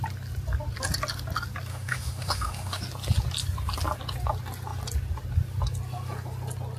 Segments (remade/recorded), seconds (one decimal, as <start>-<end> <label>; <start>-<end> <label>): 0.0-1.7 recorded; 1.7-2.8 remade; 2.8-6.8 recorded